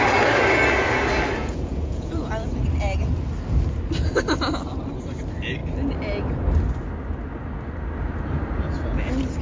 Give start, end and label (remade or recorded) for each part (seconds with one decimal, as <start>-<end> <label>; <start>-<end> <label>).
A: 0.0-1.4 recorded; 1.4-2.3 remade; 2.3-9.4 recorded